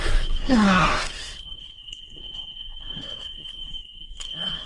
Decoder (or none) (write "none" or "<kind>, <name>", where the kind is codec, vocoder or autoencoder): codec, SNAC